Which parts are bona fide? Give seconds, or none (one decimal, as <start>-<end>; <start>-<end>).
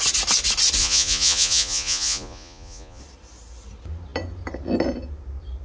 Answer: 0.0-0.8; 3.0-5.6